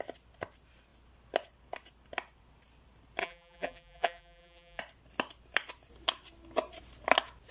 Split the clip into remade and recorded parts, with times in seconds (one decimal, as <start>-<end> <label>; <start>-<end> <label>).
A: 0.0-3.2 recorded; 3.2-4.8 remade; 4.8-7.5 recorded

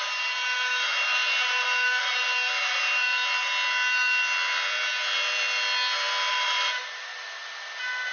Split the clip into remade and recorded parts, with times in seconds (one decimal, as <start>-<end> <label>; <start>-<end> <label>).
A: 0.0-3.2 remade; 3.2-6.3 recorded; 6.3-7.1 remade; 7.1-8.1 recorded